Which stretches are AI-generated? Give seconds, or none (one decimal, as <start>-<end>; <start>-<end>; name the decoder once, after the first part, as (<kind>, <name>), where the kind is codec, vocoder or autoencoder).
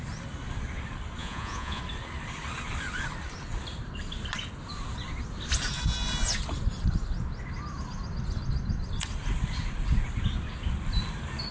1.2-1.8 (vocoder, Vocos)